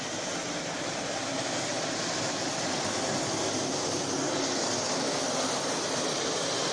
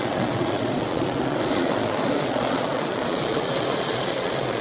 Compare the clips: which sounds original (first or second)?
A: first